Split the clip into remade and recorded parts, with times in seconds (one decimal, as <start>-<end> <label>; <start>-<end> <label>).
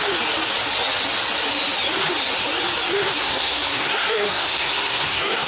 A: 0.0-3.2 recorded; 3.2-5.5 remade